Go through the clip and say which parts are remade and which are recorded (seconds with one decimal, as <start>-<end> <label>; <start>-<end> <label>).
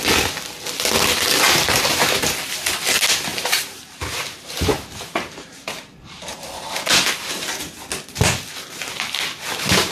0.0-3.3 recorded; 3.3-7.1 remade; 7.1-9.9 recorded